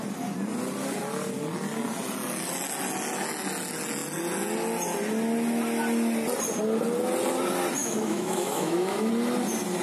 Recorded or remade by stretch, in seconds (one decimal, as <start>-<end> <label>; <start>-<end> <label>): 0.0-7.8 recorded; 7.8-9.1 remade; 9.1-9.8 recorded